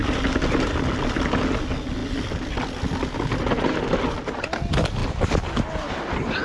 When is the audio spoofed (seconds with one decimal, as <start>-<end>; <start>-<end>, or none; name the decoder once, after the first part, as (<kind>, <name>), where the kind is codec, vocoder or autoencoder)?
none